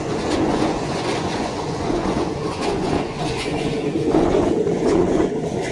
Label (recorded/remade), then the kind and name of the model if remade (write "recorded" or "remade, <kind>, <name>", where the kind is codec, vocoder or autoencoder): remade, vocoder, Vocos